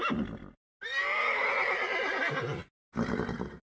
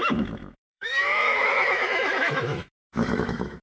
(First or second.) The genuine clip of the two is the first